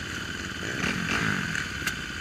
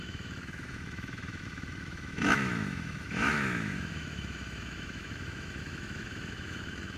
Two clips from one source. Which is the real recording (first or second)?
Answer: first